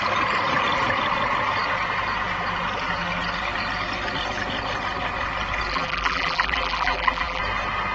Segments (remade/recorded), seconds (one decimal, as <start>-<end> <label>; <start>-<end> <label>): 0.0-5.7 recorded; 5.7-7.4 remade; 7.4-7.9 recorded